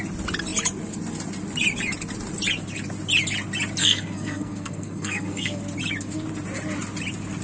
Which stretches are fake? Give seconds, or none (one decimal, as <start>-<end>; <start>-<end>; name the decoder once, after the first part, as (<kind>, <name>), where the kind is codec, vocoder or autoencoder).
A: 3.8-5.6 (codec, SNAC)